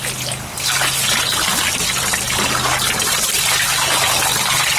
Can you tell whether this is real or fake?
real